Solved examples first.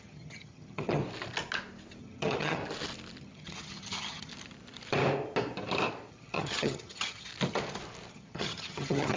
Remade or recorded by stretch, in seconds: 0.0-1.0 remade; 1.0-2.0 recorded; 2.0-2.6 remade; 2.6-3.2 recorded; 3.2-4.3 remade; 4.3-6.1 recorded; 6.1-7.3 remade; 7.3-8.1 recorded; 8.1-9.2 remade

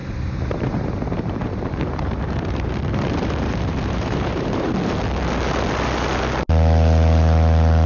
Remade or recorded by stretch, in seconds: 0.0-4.7 remade; 4.7-7.9 recorded

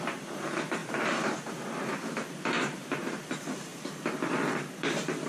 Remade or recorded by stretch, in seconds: 0.0-5.3 remade

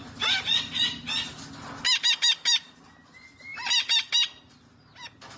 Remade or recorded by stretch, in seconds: 0.0-5.4 recorded

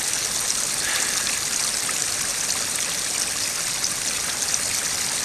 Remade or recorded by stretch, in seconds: 0.0-5.2 recorded

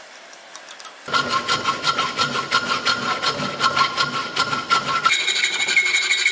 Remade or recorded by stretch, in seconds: 0.0-4.2 recorded; 4.2-5.1 remade; 5.1-6.3 recorded

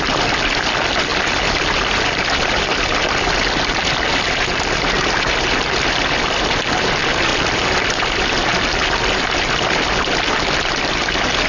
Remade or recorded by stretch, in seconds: 0.0-11.5 recorded